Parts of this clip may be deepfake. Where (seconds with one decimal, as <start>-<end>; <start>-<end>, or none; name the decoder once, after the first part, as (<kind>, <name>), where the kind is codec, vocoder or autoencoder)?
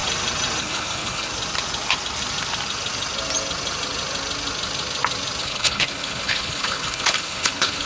0.6-1.3 (codec, HILCodec); 5.4-7.9